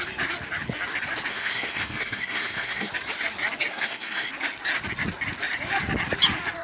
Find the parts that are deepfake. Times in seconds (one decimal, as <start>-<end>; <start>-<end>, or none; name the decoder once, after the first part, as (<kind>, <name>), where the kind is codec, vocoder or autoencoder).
1.3-2.9 (codec, SNAC); 3.7-4.3